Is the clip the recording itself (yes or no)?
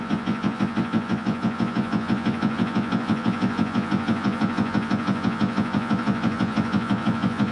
no